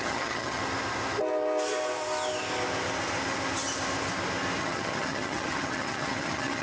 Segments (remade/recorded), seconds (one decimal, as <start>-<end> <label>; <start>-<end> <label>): 0.0-0.6 remade; 0.6-4.6 recorded; 4.6-6.6 remade